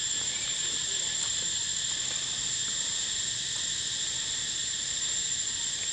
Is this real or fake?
real